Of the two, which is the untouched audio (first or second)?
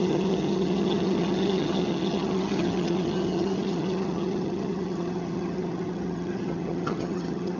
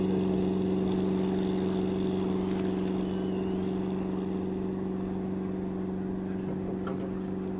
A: second